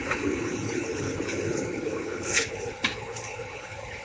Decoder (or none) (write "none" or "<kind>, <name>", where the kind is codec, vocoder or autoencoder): codec, HILCodec